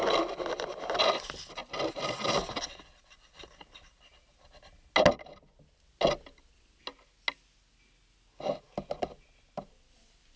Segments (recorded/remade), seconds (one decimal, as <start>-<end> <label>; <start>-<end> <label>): 0.0-10.4 recorded